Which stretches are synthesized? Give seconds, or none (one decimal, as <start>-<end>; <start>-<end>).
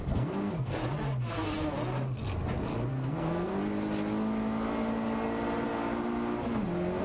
0.0-0.8; 2.9-3.5